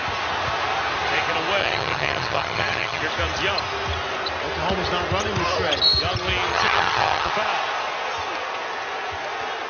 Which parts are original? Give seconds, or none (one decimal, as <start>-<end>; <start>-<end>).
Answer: 0.0-1.6; 3.0-6.5; 7.3-9.7